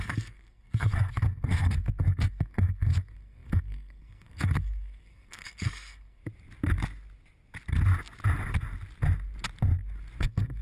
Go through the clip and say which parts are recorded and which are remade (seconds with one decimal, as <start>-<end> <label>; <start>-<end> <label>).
0.0-6.2 remade; 6.2-10.2 recorded; 10.2-10.6 remade